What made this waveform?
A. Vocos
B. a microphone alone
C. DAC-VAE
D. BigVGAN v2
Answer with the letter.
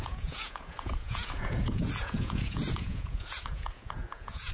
A